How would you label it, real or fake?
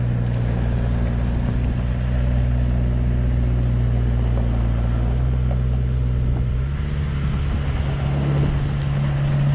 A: real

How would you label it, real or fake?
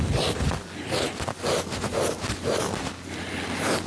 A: real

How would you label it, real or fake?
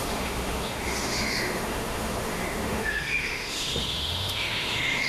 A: fake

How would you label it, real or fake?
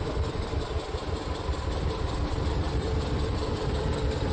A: fake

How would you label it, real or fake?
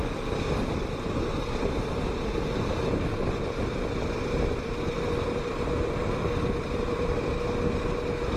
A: real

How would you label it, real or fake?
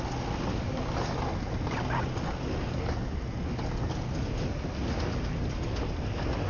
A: real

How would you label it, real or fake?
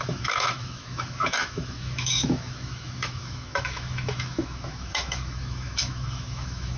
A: fake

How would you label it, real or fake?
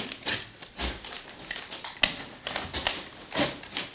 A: real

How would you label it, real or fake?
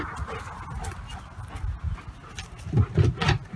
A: real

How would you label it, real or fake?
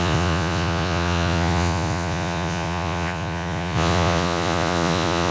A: fake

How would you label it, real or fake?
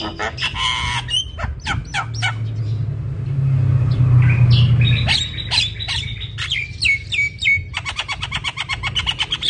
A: real